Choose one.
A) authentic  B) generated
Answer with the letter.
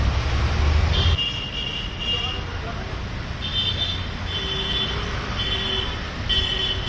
A